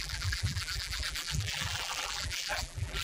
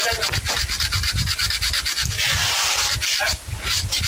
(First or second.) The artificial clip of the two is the first